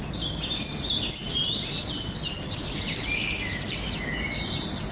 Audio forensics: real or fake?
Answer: real